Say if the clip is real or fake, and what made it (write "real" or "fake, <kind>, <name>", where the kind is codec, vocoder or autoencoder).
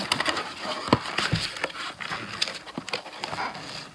real